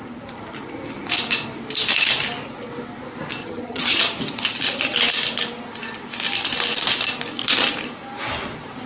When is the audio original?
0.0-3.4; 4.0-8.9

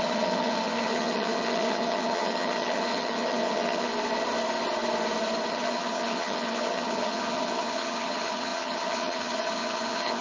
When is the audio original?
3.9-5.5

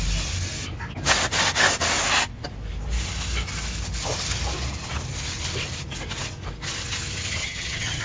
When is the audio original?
0.0-7.4

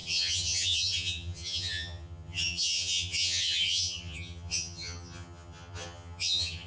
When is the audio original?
none